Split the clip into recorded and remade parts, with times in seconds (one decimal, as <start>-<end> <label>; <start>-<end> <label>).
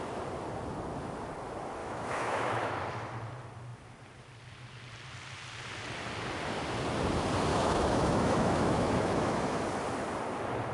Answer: 0.0-1.8 recorded; 1.8-2.7 remade; 2.7-7.5 recorded; 7.5-9.6 remade; 9.6-10.7 recorded